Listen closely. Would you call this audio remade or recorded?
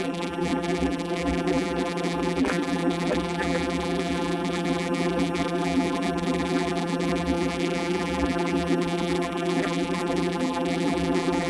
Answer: remade